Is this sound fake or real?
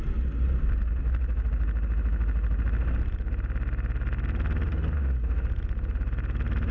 real